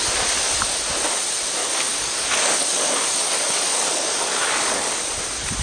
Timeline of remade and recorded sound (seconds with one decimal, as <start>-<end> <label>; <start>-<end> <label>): 0.0-1.6 recorded; 1.6-5.0 remade; 5.0-5.6 recorded